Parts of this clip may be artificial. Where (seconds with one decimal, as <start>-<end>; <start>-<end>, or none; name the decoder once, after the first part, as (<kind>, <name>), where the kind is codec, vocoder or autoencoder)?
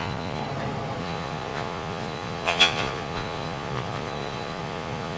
0.0-0.4 (vocoder, Vocos); 1.0-5.2